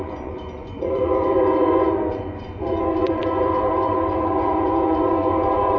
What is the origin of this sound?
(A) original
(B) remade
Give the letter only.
B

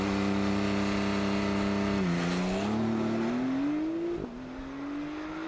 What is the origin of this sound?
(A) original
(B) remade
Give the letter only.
A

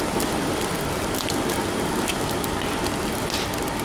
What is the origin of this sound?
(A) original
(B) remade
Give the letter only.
A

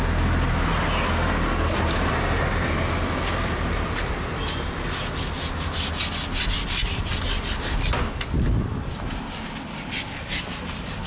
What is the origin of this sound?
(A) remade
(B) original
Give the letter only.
B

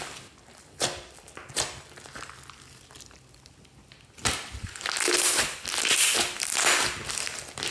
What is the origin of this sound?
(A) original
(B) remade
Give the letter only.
A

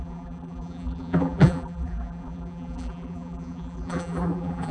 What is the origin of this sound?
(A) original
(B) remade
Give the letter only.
B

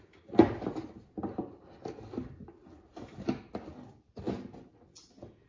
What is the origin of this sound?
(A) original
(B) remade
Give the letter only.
A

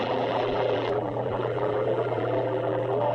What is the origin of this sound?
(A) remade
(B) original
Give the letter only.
A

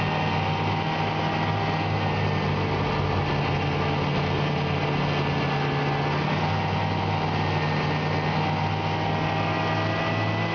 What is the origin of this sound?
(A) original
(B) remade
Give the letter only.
A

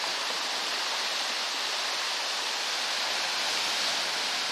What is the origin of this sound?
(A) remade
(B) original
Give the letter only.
B